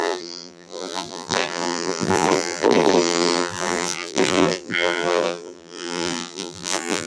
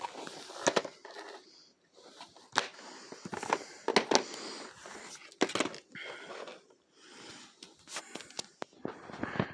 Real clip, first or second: second